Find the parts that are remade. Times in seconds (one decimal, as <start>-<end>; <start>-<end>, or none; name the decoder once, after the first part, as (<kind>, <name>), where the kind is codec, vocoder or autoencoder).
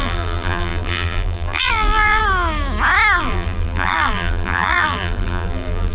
0.0-2.2 (vocoder, BigVGAN v2); 3.2-5.9